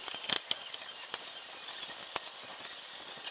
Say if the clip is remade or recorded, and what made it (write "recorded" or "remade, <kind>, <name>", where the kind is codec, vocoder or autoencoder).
recorded